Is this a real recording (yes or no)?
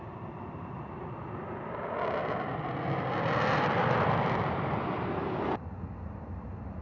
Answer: yes